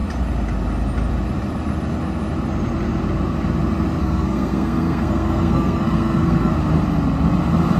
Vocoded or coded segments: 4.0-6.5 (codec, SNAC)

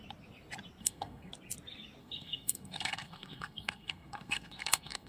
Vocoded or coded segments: 0.8-1.3 (codec, SNAC); 2.0-5.1

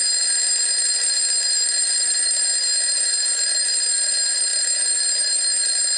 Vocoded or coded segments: none

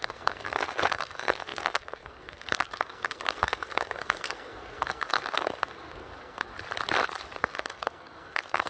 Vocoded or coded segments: 0.0-6.5 (codec, SNAC); 7.4-8.7

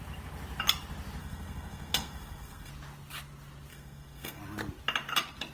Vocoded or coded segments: 1.2-2.7 (codec, SNAC); 3.7-4.4